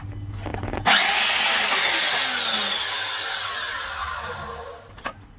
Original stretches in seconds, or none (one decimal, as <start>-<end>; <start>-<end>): 0.0-5.4